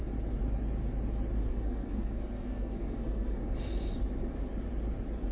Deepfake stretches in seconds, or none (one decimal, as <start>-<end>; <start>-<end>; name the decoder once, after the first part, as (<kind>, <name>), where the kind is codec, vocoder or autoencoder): 1.5-3.5 (codec, SNAC)